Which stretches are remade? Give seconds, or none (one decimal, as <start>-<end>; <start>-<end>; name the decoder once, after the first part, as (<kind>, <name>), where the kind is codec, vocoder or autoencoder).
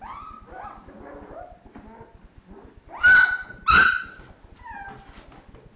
none